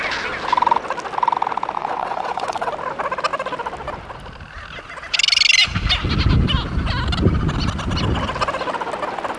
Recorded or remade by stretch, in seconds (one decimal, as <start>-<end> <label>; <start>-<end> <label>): 0.0-1.8 recorded; 1.8-2.7 remade; 2.7-9.4 recorded